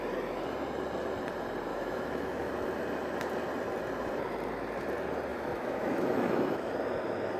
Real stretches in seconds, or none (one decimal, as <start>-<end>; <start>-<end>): 0.0-1.7; 2.5-5.3; 6.7-7.4